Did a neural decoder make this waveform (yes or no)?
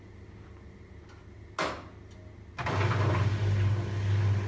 no